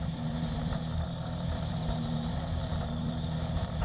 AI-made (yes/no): yes